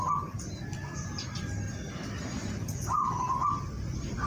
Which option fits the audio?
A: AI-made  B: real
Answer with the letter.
B